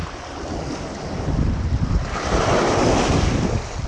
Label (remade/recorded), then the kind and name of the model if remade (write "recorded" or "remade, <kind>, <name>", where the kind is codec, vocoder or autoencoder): recorded